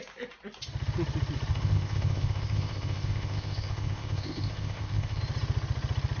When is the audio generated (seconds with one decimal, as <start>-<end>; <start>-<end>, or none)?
1.5-5.2